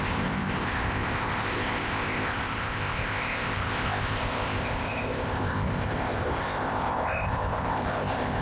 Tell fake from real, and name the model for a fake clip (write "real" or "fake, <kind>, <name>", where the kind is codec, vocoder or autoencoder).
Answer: fake, codec, ZipCodec